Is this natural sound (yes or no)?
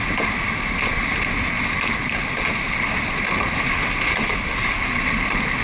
yes